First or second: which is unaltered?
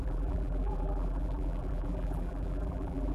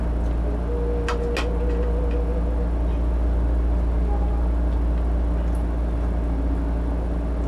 second